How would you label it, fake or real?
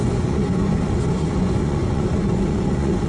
fake